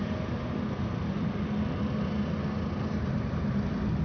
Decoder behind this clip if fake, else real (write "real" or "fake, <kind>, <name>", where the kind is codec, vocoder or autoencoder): real